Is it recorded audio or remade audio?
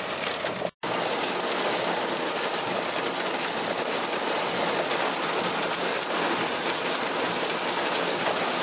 recorded